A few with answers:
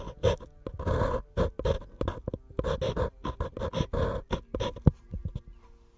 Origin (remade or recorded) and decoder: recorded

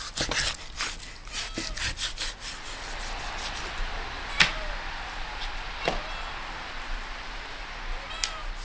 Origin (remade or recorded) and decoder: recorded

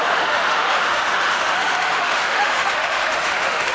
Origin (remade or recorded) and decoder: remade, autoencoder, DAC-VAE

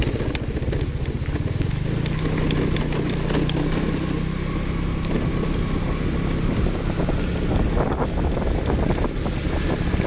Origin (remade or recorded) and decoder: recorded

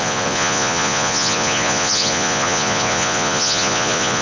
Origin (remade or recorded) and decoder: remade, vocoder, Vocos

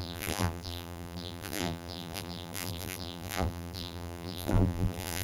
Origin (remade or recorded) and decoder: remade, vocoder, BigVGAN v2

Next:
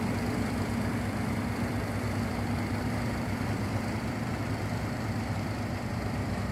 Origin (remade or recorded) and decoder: remade, vocoder, BigVGAN v2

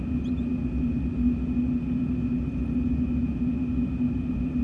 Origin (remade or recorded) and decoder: recorded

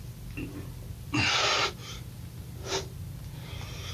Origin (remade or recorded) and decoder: recorded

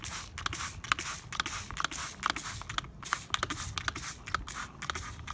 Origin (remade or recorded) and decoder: recorded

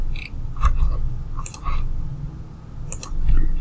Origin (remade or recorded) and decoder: recorded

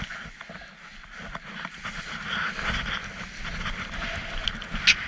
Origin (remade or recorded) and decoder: recorded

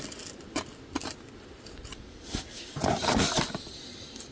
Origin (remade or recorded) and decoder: recorded